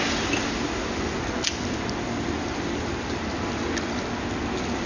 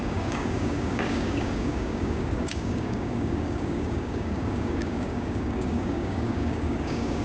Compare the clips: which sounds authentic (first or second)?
first